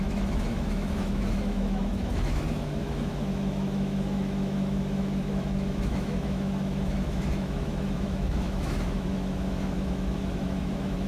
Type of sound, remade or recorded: remade